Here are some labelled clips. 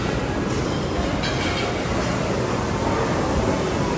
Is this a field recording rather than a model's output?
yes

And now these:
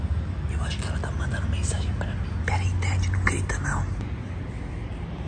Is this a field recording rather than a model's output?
yes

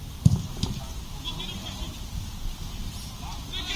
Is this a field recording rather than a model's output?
yes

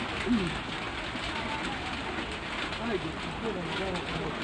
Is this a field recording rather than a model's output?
yes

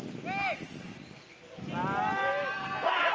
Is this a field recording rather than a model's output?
yes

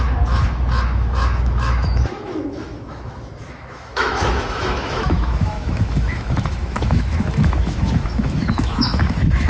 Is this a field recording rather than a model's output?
no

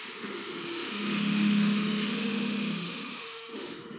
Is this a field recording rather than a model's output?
no